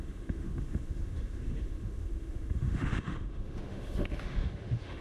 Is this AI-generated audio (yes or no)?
yes